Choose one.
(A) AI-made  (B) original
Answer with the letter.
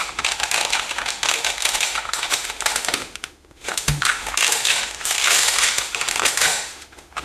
A